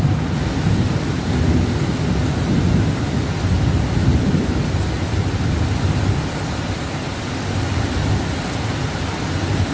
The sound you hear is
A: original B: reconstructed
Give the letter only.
A